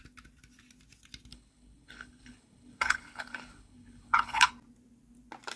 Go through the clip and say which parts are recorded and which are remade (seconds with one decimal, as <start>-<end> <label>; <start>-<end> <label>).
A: 0.0-1.3 recorded; 1.3-4.5 remade; 4.5-5.6 recorded